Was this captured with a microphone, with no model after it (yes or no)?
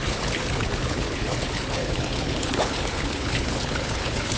no